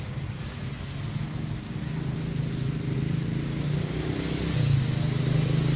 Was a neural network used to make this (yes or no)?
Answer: no